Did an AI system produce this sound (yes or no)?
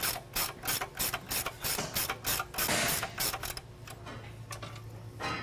no